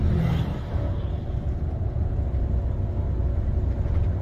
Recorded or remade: recorded